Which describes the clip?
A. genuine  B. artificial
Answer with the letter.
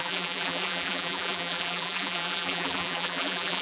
B